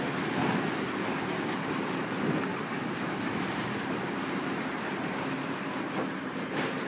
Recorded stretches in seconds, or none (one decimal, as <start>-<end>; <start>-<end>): 0.0-2.5